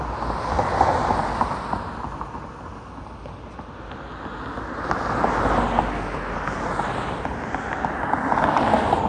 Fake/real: real